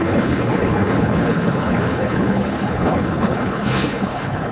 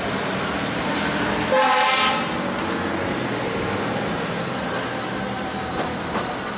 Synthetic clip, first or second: first